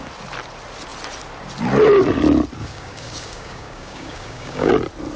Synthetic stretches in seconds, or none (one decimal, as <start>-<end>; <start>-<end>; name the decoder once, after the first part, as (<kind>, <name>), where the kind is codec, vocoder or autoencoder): 2.6-4.7 (codec, DAC)